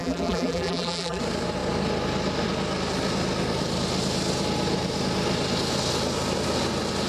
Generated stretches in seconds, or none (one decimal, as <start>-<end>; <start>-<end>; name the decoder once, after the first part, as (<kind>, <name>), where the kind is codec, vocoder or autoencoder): 0.0-1.2 (vocoder, BigVGAN v2)